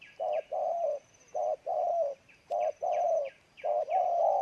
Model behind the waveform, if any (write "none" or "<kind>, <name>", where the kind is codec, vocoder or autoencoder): vocoder, BigVGAN v2